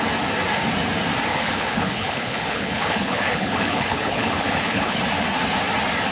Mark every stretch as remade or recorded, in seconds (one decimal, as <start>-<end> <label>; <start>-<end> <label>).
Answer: 0.0-1.3 recorded; 1.3-5.0 remade; 5.0-6.1 recorded